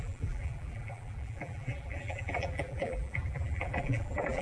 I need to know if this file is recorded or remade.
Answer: remade